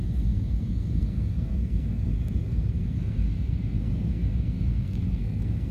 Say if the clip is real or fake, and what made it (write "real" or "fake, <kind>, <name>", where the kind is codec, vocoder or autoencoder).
fake, codec, SNAC